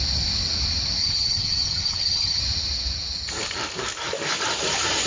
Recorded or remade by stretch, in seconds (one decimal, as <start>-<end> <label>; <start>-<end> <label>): 0.0-1.0 recorded; 1.0-2.4 remade; 2.4-5.1 recorded